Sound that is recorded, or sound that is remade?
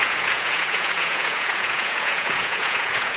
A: remade